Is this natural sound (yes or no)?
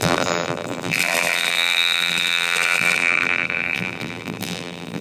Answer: no